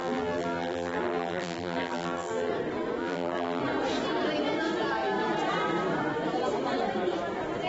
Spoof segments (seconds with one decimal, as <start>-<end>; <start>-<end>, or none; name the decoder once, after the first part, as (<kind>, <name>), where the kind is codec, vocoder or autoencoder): 0.0-2.5 (vocoder, BigVGAN v2); 3.0-3.6